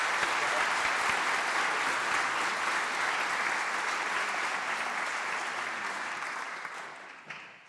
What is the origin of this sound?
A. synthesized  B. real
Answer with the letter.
B